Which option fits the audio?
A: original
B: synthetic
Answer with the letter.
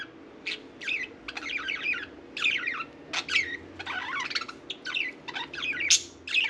A